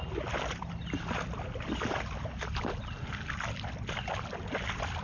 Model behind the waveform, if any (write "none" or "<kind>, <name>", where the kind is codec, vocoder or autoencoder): none